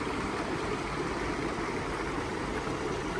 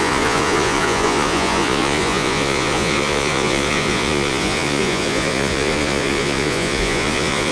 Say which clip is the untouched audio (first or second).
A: first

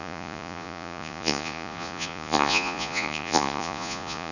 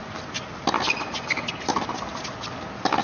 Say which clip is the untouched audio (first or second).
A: second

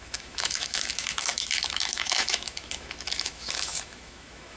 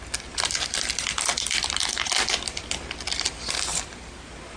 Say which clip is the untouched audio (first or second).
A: second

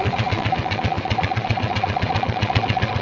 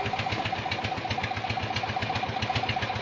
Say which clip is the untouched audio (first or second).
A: second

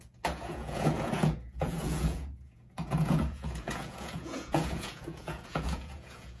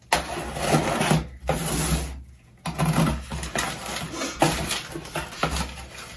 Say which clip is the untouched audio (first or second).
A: second